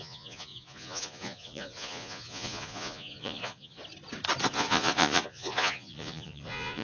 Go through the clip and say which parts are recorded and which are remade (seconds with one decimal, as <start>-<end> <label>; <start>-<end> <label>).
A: 0.0-3.8 remade; 3.8-4.5 recorded; 4.5-6.8 remade